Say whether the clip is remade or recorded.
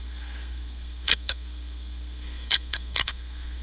remade